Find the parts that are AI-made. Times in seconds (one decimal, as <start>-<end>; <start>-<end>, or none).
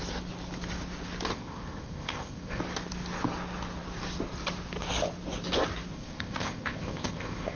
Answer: 1.3-2.6; 5.9-7.6